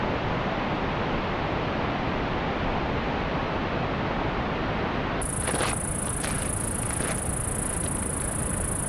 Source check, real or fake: real